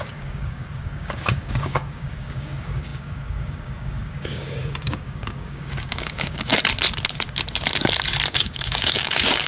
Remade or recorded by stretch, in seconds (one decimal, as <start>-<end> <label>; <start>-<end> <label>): 0.0-6.5 remade; 6.5-8.3 recorded; 8.3-9.5 remade